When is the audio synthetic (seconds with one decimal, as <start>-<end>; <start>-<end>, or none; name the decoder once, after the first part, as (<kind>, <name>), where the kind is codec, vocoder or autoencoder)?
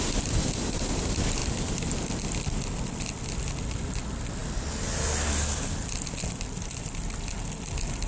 none